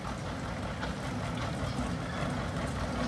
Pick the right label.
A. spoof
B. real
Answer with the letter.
B